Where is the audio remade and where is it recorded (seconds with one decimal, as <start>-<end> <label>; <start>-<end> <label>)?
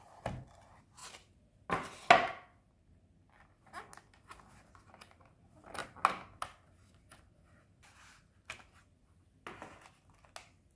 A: 0.0-10.8 recorded